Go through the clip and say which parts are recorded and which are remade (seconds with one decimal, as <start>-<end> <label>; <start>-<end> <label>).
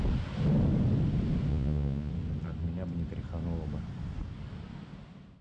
0.0-1.5 recorded; 1.5-2.1 remade; 2.1-5.4 recorded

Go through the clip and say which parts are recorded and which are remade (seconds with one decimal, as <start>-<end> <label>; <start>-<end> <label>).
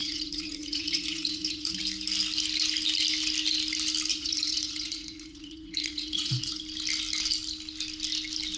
0.0-1.8 remade; 1.8-4.1 recorded; 4.1-6.6 remade; 6.6-8.6 recorded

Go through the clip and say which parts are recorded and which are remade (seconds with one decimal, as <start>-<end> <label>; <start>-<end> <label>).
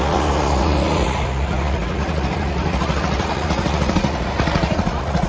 0.0-5.3 remade